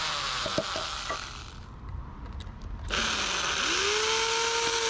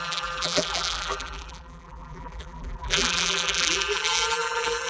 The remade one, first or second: second